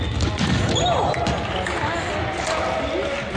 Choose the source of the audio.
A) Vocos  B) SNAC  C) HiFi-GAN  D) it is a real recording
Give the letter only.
D